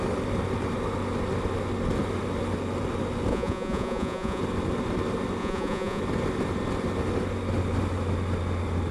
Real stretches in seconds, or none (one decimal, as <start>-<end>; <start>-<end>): 0.0-3.3; 4.4-5.4; 6.0-8.9